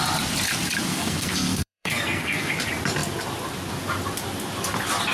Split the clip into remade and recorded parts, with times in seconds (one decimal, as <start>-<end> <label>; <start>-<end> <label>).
0.0-0.9 recorded; 0.9-2.5 remade; 2.5-5.1 recorded